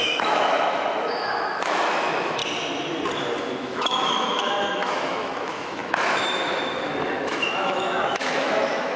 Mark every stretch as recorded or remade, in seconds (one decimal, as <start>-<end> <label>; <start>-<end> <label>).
0.0-2.4 remade; 2.4-3.4 recorded; 3.4-9.0 remade